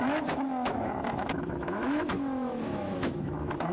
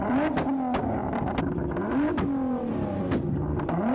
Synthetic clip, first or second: first